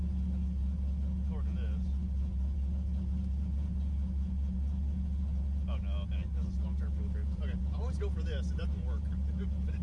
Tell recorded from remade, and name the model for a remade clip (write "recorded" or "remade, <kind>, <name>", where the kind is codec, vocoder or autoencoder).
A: recorded